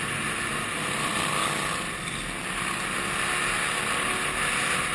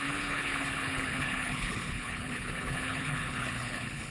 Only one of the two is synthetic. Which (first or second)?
second